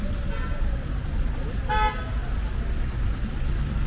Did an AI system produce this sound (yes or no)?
no